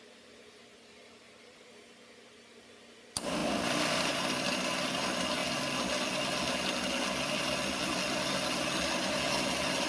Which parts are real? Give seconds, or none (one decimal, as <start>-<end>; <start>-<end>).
5.4-9.5

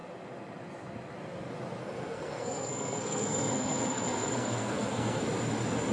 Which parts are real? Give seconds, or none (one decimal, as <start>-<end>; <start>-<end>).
0.0-1.8; 5.2-5.9

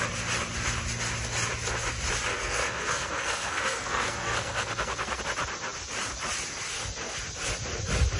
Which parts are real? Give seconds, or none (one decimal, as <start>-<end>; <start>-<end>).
0.0-2.3; 5.2-8.2

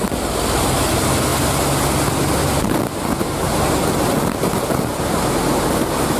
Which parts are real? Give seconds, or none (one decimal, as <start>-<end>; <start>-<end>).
0.0-6.2

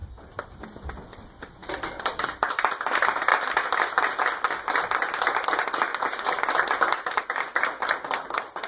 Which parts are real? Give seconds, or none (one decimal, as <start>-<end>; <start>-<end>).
0.6-1.6; 2.6-3.3; 4.2-5.9; 7.2-8.7

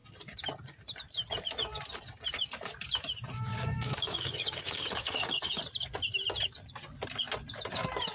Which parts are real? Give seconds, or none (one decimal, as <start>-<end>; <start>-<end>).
0.0-3.5; 5.6-8.1